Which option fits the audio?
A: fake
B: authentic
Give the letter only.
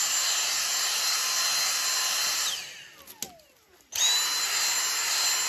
B